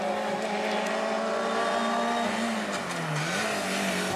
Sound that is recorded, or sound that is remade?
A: recorded